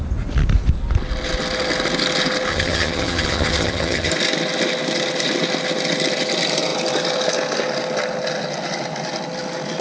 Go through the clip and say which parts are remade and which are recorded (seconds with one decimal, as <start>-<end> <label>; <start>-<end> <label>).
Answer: 0.0-2.5 recorded; 2.5-4.1 remade; 4.1-9.8 recorded